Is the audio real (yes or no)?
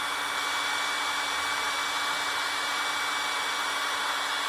yes